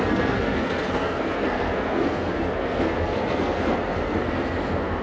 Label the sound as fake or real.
fake